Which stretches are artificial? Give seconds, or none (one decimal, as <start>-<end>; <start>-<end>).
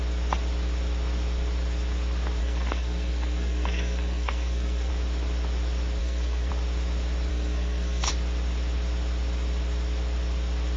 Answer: 2.4-4.9; 6.0-6.5; 7.3-8.1